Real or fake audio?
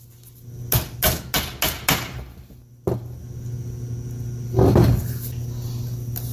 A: real